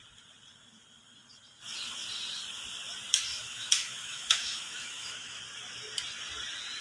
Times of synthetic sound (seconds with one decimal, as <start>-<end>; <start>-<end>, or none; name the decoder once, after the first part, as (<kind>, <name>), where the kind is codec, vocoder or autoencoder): 3.3-5.4 (autoencoder, DAC-VAE)